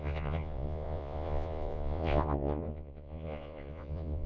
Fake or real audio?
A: fake